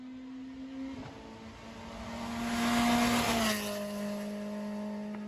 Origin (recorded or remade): recorded